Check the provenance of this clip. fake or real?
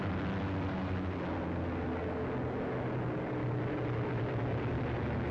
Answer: real